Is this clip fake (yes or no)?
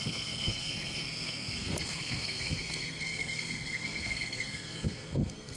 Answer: yes